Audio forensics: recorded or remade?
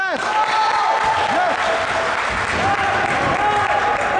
recorded